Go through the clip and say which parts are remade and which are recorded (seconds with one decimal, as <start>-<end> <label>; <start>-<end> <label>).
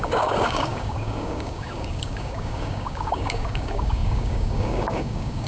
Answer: 0.0-5.5 remade